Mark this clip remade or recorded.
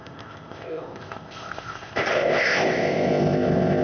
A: remade